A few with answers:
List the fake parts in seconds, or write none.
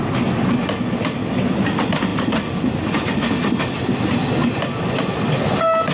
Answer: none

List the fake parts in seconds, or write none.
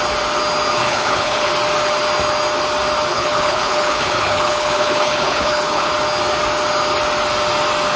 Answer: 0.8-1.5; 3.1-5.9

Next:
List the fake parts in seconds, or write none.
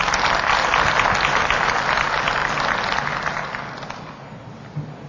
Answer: none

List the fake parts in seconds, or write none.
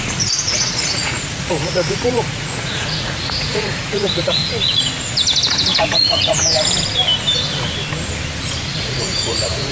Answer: 0.0-4.4; 5.8-6.4; 8.8-9.7